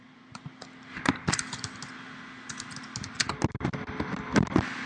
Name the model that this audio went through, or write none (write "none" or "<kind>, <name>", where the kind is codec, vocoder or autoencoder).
none